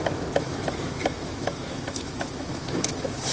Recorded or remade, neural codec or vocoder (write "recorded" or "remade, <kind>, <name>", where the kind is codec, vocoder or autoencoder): remade, autoencoder, DAC-VAE